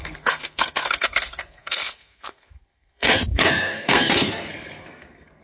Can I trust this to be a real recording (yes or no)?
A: no